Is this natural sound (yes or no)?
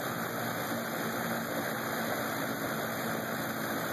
yes